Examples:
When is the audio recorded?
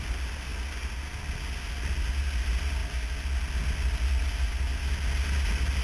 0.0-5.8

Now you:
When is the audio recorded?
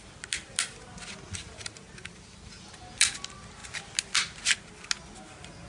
0.0-5.7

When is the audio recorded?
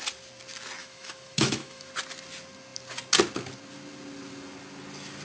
0.0-0.8; 1.9-5.2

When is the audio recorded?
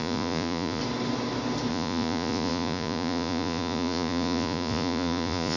0.8-1.7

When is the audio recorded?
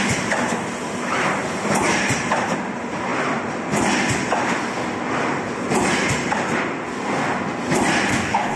0.0-8.1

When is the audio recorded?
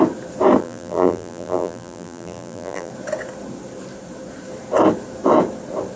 0.0-0.6; 2.9-6.0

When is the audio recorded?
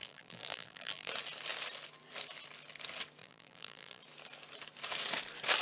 1.1-3.2; 4.0-5.6